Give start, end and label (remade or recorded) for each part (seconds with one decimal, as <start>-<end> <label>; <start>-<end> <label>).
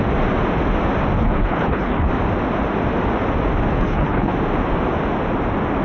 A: 0.0-1.2 recorded; 1.2-2.1 remade; 2.1-3.7 recorded; 3.7-4.3 remade; 4.3-5.8 recorded